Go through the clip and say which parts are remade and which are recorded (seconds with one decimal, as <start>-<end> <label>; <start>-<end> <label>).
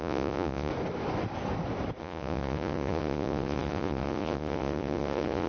0.0-0.7 remade; 0.7-2.0 recorded; 2.0-5.5 remade